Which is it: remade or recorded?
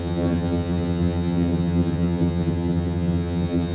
remade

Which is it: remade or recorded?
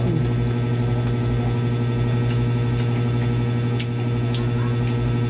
recorded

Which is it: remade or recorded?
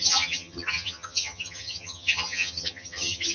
remade